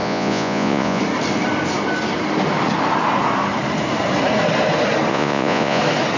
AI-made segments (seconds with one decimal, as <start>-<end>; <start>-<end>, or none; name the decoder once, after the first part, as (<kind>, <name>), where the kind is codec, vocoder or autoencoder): 0.0-1.0 (vocoder, Vocos); 5.1-5.8